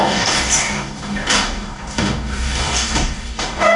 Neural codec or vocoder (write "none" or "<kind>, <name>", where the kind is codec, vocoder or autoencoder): codec, DAC